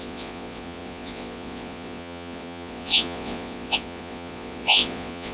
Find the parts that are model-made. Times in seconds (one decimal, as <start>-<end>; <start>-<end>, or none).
0.0-5.3